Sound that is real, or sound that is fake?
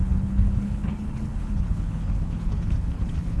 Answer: fake